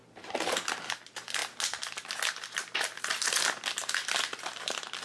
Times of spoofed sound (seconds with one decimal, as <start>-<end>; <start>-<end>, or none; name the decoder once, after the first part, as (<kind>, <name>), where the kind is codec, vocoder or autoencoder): 0.0-1.4 (vocoder, BigVGAN v2); 4.4-5.0